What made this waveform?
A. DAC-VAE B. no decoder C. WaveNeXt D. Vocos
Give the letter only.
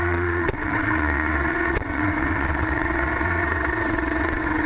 C